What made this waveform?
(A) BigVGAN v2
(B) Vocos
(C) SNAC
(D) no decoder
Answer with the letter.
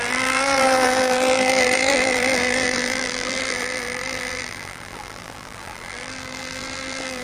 A